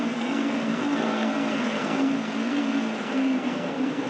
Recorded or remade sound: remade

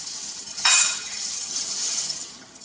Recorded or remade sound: remade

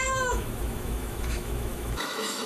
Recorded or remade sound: remade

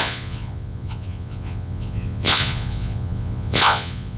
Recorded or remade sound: remade